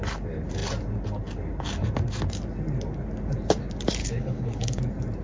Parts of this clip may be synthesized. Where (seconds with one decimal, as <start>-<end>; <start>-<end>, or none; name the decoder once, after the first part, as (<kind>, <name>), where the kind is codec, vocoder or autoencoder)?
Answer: 4.0-4.8 (codec, HILCodec)